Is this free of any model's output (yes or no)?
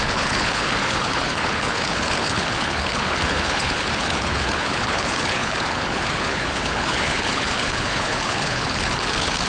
no